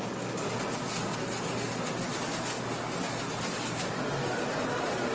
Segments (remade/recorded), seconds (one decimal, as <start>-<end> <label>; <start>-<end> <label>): 0.0-5.1 recorded